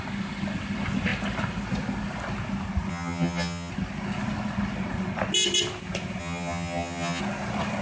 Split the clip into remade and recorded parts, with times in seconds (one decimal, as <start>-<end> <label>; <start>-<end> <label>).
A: 0.0-2.9 recorded; 2.9-3.7 remade; 3.7-6.2 recorded; 6.2-7.2 remade; 7.2-7.8 recorded